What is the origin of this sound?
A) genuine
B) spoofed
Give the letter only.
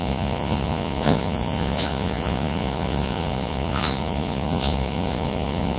B